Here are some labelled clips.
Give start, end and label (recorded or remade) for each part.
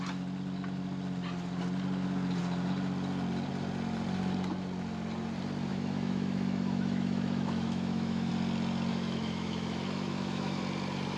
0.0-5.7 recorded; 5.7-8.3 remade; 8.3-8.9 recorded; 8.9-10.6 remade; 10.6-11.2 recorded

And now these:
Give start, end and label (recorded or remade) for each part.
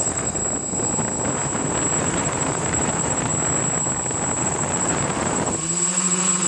0.0-0.4 remade; 0.4-2.0 recorded; 2.0-3.3 remade; 3.3-4.4 recorded; 4.4-6.5 remade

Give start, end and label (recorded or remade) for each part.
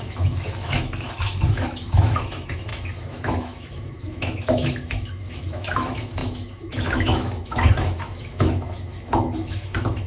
0.0-10.1 remade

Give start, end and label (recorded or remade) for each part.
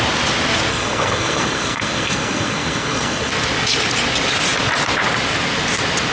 0.0-0.7 recorded; 0.7-3.3 remade; 3.3-6.1 recorded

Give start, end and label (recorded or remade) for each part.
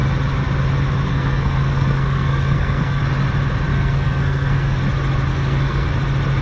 0.0-1.1 recorded; 1.1-3.0 remade; 3.0-3.7 recorded; 3.7-4.8 remade; 4.8-5.3 recorded; 5.3-5.9 remade; 5.9-6.4 recorded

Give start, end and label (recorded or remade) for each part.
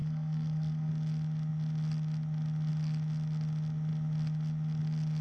0.0-0.9 remade; 0.9-5.2 recorded